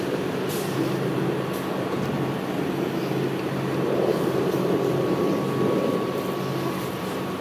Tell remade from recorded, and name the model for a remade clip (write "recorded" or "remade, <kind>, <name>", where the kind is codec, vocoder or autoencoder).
recorded